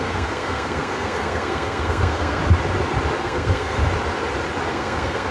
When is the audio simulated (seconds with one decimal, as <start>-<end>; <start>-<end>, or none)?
0.0-2.4; 3.2-3.8; 4.7-5.3